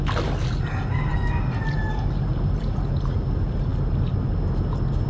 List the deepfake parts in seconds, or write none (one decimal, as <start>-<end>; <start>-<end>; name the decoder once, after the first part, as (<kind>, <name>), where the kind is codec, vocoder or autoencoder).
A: none